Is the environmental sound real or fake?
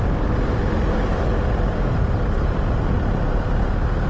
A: real